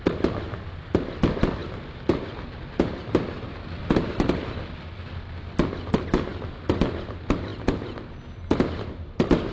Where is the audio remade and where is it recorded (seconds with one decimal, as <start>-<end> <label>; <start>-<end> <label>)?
0.0-9.5 recorded